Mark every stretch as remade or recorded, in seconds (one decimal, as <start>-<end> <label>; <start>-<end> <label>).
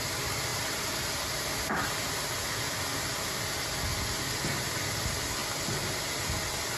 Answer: 0.0-6.8 recorded